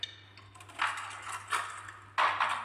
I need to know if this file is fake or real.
real